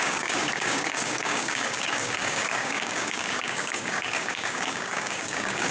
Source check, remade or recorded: remade